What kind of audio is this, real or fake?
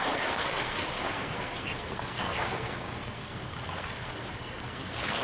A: fake